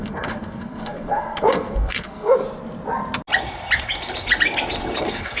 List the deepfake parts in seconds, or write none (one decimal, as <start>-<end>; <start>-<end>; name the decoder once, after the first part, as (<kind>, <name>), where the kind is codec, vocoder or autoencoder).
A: 0.0-2.4 (codec, SNAC); 5.0-5.4